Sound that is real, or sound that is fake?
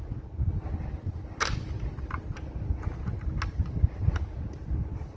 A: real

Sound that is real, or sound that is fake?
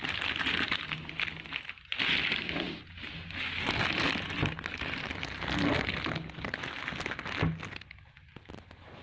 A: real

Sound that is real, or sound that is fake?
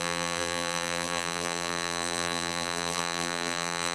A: fake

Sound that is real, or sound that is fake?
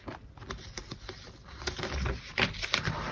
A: real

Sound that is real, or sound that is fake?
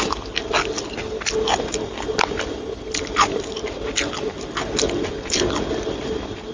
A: real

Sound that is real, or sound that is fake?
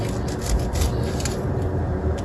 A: real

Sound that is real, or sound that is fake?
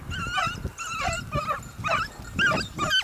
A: real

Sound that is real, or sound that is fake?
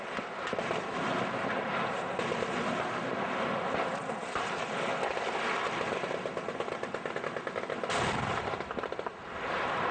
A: real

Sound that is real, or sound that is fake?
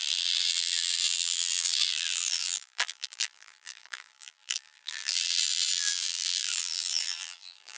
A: fake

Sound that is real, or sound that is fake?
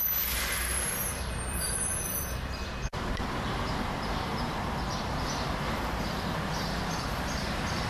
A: fake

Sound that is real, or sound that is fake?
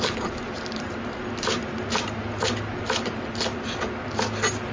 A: real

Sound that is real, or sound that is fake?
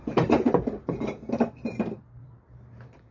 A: fake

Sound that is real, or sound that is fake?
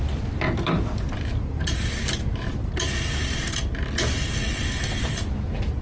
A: real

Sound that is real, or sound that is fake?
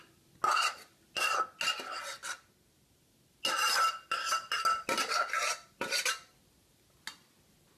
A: real